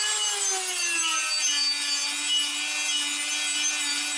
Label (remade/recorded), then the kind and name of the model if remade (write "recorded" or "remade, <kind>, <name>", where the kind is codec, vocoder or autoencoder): recorded